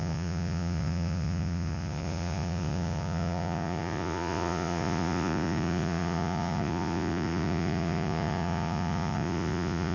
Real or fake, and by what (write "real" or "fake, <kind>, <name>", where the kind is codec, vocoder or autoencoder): fake, vocoder, Vocos